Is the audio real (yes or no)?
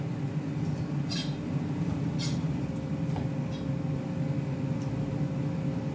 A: yes